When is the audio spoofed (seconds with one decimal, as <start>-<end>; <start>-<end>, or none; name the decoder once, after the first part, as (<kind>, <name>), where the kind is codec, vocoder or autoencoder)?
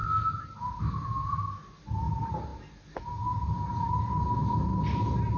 none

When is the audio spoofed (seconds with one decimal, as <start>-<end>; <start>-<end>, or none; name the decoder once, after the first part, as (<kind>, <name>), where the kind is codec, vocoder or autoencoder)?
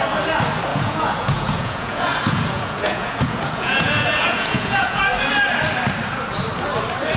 0.7-5.0 (vocoder, Vocos)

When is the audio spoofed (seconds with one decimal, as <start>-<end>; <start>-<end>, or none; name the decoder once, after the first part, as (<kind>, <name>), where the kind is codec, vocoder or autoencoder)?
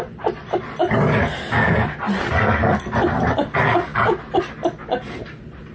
none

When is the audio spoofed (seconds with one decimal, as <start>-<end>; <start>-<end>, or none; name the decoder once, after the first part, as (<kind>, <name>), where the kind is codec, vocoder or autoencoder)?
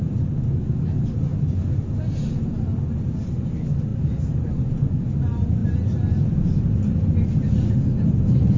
none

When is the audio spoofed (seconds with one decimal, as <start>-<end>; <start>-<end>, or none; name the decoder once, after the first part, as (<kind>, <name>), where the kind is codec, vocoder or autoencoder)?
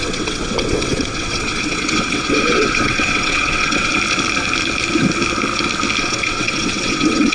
0.0-3.9 (vocoder, WaveNeXt); 6.0-7.3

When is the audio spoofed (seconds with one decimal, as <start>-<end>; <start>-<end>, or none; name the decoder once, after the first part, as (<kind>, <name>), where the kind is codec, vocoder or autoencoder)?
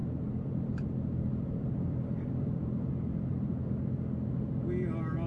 0.0-2.9 (vocoder, BigVGAN v2); 3.3-3.8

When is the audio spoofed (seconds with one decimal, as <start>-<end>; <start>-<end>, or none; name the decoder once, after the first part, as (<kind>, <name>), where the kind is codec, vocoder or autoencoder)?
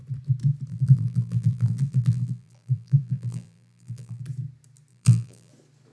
0.7-4.2 (vocoder, BigVGAN v2); 4.9-5.5